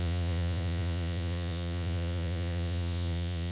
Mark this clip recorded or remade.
remade